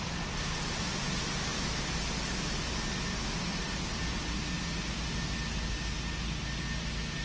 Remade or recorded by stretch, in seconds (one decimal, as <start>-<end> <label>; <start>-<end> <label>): 0.0-7.2 recorded